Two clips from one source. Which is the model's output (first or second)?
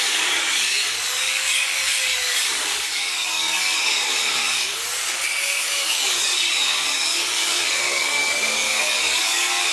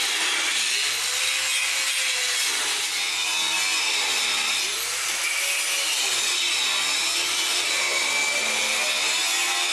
first